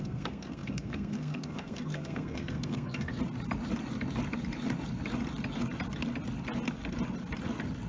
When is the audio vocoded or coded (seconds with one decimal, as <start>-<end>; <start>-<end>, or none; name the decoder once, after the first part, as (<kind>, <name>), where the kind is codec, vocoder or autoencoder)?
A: 0.0-3.1 (codec, SNAC)